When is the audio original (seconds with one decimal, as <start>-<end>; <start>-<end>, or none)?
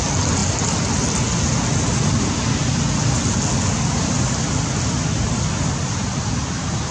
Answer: 0.0-6.9